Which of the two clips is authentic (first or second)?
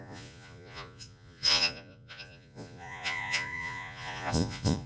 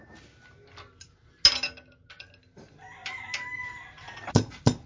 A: second